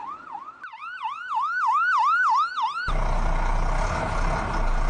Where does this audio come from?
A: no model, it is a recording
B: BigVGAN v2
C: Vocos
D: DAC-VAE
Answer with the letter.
A